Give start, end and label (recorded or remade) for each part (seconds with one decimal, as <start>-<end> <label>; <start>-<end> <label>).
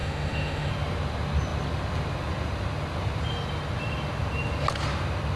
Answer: 0.0-0.7 remade; 0.7-5.4 recorded